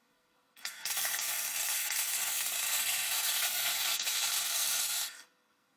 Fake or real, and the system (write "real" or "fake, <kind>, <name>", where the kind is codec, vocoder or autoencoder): fake, codec, SNAC